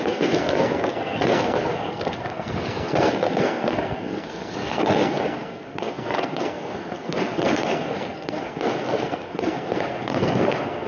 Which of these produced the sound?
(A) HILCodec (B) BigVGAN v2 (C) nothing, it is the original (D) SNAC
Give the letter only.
D